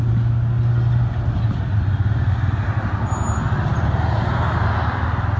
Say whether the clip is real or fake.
real